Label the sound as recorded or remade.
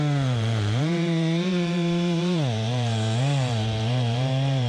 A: remade